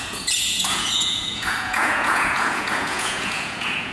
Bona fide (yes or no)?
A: no